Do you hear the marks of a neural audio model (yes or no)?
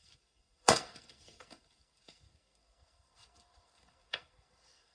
yes